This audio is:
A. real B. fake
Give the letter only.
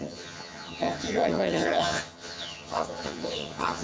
B